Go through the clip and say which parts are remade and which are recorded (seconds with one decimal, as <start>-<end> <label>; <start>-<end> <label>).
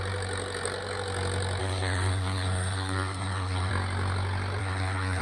0.0-1.6 recorded; 1.6-3.7 remade; 3.7-4.6 recorded; 4.6-5.2 remade